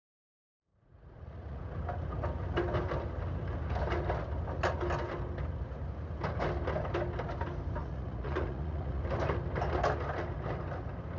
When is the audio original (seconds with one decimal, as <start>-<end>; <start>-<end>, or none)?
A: 0.0-0.7; 1.6-7.8; 9.0-11.2